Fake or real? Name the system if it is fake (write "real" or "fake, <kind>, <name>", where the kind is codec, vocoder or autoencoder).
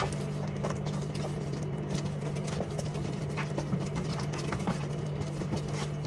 real